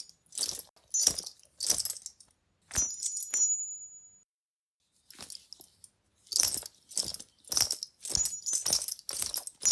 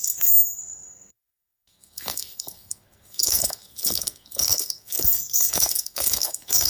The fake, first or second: second